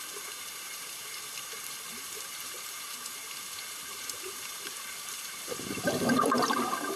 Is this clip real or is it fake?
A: fake